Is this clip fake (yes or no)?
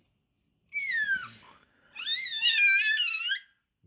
no